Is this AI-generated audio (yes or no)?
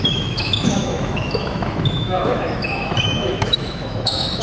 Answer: yes